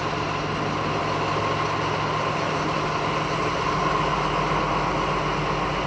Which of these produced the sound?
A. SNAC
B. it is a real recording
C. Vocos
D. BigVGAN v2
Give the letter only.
B